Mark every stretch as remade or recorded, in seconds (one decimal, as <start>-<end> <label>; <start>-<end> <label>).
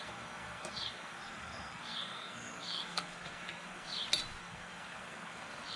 0.0-3.9 remade; 3.9-4.4 recorded; 4.4-5.8 remade